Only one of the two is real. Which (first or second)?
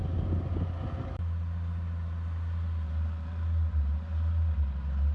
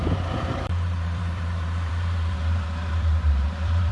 first